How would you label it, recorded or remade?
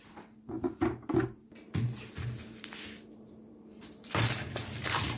remade